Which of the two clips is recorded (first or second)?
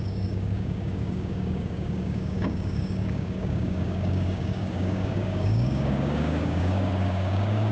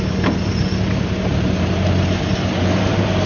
second